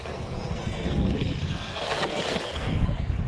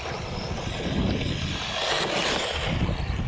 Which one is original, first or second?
second